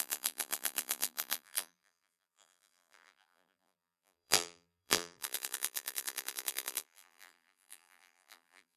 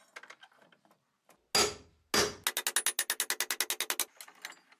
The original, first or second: second